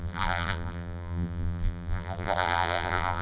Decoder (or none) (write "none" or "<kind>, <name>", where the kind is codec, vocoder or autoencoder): vocoder, BigVGAN v2